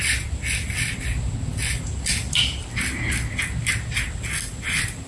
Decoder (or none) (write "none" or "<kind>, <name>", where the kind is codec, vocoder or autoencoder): none